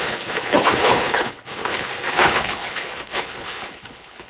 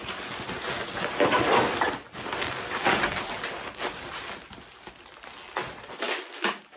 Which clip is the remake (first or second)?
first